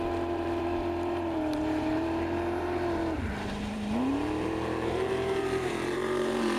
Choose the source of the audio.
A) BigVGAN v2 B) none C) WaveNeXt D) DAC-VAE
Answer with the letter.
A